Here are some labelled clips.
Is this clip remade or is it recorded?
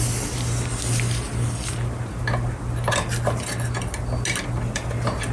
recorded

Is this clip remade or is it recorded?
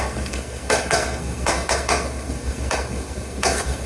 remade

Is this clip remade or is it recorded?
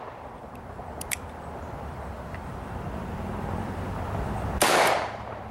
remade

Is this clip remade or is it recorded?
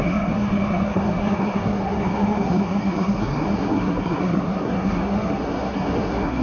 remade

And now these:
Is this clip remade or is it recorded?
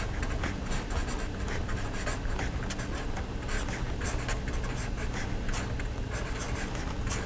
recorded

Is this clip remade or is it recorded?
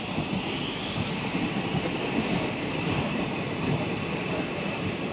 recorded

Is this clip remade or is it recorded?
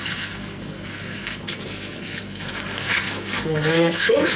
remade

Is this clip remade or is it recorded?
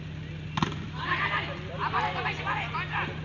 recorded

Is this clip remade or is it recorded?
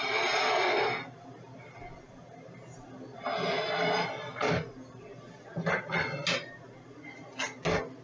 recorded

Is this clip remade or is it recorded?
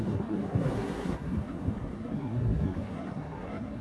remade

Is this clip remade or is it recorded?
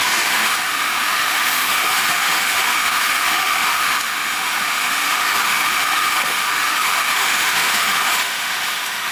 remade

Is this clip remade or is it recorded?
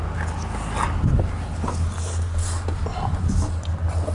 recorded